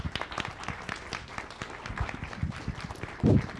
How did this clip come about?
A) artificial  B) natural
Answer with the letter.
A